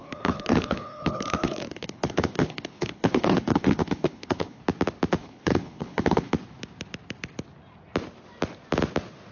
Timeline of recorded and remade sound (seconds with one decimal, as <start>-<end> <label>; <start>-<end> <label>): 0.0-4.6 remade; 4.6-5.2 recorded; 5.2-6.3 remade; 6.3-9.3 recorded